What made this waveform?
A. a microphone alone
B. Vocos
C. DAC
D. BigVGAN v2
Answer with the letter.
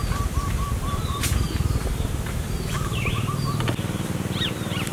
D